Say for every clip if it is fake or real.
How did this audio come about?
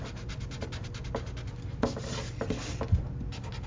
real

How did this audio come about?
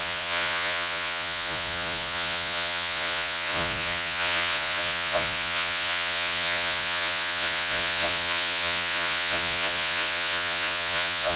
fake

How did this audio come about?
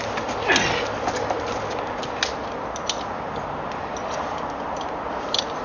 real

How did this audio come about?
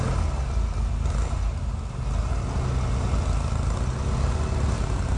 real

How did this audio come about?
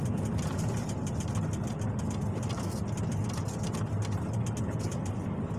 real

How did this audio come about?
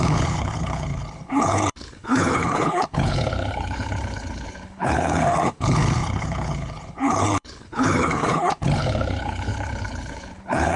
fake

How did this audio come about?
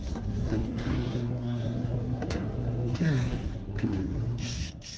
fake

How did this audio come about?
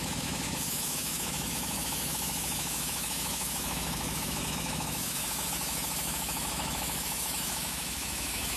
fake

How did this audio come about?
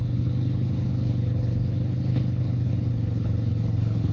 fake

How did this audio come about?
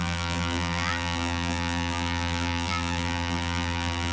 fake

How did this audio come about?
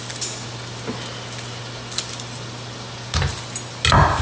real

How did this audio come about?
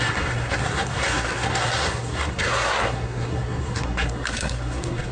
fake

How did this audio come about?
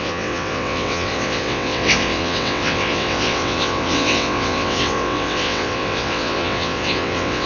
fake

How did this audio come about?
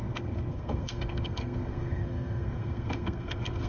fake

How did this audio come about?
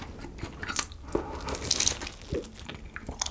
real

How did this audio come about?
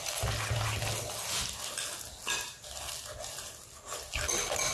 real